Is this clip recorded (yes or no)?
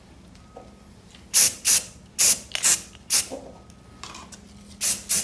yes